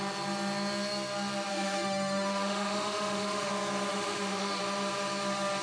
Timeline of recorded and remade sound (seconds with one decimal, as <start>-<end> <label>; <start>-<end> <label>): 0.0-1.5 recorded; 1.5-3.5 remade; 3.5-3.9 recorded; 3.9-4.6 remade; 4.6-5.6 recorded